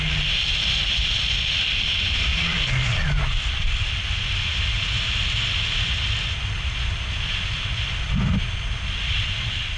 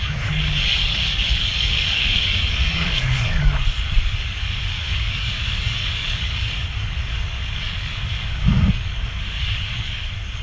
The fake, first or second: second